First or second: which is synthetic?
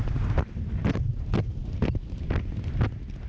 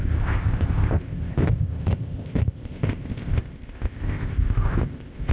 second